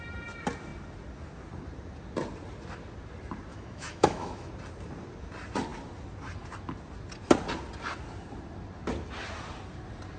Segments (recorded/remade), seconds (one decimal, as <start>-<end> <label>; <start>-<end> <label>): 0.0-3.5 recorded; 3.5-4.5 remade; 4.5-10.2 recorded